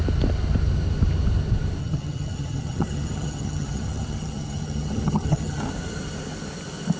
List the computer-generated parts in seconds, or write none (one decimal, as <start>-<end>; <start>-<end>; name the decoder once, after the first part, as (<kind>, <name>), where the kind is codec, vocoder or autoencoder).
1.8-5.6 (vocoder, HiFi-GAN)